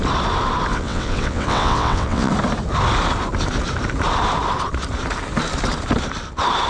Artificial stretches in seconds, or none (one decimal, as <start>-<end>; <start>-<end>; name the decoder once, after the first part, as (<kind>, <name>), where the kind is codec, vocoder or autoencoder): 0.7-2.3 (vocoder, WaveNeXt)